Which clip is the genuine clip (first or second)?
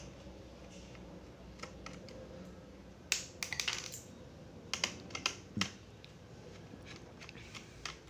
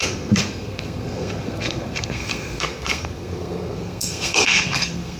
first